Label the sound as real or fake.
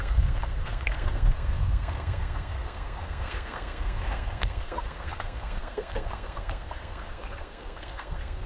fake